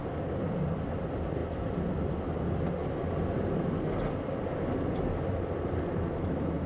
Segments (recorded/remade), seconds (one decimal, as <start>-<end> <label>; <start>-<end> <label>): 0.0-6.7 recorded